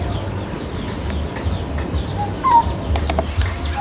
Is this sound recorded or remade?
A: recorded